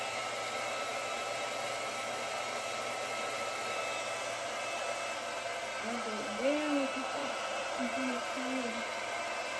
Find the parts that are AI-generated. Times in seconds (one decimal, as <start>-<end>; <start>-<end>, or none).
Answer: 7.2-8.8